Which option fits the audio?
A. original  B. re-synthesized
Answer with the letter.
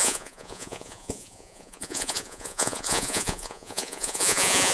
B